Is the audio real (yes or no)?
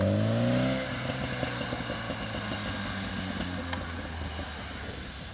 yes